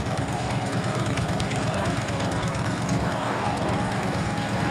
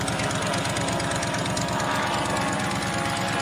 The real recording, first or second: second